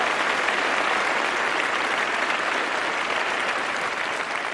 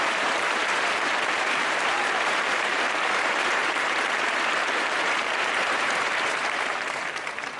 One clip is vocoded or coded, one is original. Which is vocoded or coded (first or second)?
second